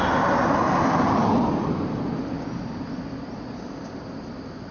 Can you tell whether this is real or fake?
real